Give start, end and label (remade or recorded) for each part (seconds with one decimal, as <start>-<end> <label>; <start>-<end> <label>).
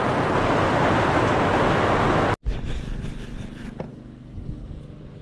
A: 0.0-3.9 recorded; 3.9-4.8 remade; 4.8-5.2 recorded